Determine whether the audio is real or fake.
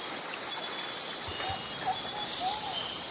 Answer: real